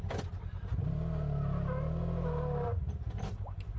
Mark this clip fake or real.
real